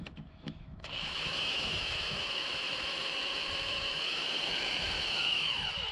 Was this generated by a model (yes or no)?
yes